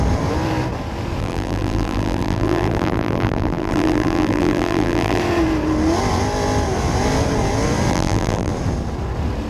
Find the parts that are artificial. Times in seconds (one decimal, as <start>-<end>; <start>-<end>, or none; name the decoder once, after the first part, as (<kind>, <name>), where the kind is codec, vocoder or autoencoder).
1.2-5.2 (vocoder, BigVGAN v2); 7.9-8.5